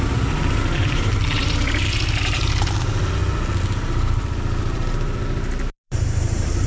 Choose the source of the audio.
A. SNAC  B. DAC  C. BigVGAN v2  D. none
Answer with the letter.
C